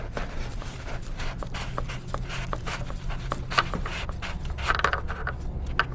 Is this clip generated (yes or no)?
no